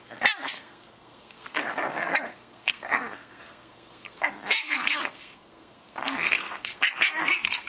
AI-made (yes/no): yes